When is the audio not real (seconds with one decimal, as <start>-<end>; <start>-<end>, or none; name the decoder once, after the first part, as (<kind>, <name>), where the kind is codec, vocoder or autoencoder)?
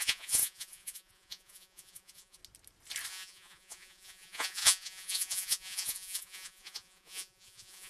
0.0-2.4 (vocoder, Vocos); 3.1-7.9